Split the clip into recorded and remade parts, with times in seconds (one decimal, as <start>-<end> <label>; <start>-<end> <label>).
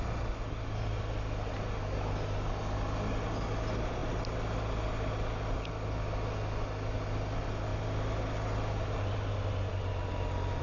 0.0-10.6 recorded